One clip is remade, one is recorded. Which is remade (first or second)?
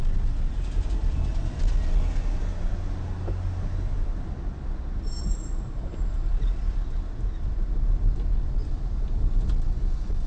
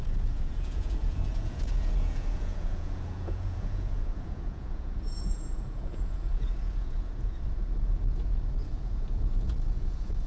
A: second